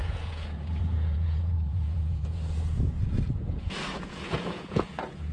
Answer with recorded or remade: remade